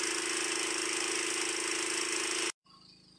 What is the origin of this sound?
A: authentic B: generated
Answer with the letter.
A